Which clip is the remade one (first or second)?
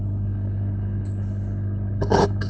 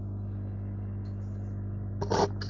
first